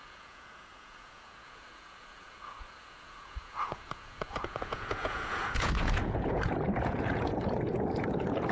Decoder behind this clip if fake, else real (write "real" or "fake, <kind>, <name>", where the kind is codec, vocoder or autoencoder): fake, vocoder, Vocos